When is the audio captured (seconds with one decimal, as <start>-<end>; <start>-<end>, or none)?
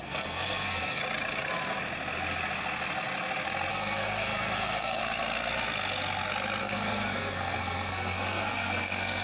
1.0-3.7; 5.0-6.6